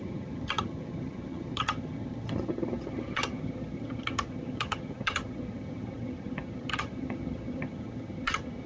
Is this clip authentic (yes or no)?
no